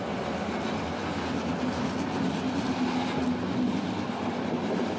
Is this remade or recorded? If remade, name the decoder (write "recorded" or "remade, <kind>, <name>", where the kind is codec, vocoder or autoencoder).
recorded